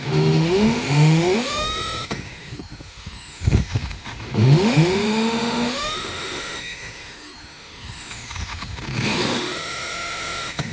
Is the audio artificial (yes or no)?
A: yes